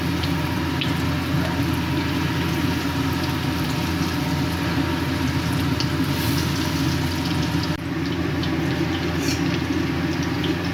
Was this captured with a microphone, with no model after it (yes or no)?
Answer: no